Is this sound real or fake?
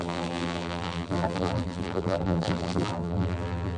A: fake